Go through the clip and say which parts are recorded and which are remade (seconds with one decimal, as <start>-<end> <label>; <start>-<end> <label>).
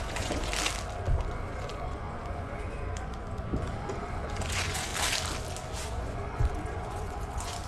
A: 0.0-0.5 remade; 0.5-1.2 recorded; 1.2-4.9 remade; 4.9-5.9 recorded; 5.9-7.7 remade